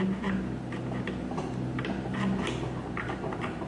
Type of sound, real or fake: real